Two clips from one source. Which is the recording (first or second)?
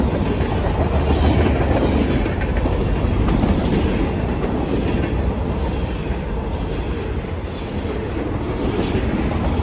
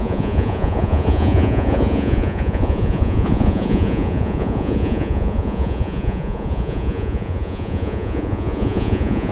first